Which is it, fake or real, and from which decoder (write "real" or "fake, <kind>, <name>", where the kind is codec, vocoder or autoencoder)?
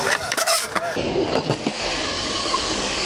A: fake, codec, DAC